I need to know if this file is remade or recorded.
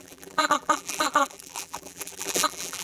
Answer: remade